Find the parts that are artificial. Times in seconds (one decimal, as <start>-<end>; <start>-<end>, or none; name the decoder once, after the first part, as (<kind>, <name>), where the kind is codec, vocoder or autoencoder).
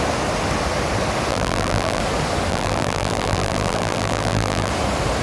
1.3-2.0 (vocoder, BigVGAN v2); 2.5-4.7